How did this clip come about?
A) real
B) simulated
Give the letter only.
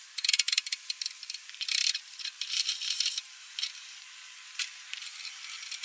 B